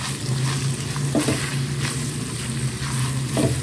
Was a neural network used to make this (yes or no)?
no